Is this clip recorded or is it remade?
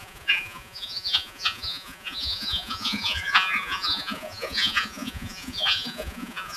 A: remade